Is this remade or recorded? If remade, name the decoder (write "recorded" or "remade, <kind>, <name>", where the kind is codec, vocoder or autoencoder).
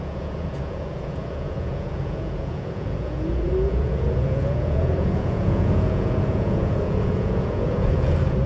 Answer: remade, vocoder, Vocos